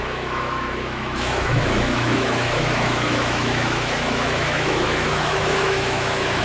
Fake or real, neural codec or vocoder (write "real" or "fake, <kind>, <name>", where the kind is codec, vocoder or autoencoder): fake, autoencoder, DAC-VAE